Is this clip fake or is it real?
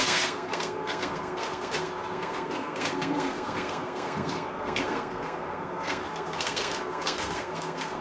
fake